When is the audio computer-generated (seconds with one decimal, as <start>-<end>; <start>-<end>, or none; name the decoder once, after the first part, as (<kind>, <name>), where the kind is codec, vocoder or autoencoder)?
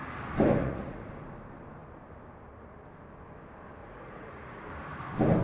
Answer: 0.6-1.1 (vocoder, Vocos); 3.8-4.7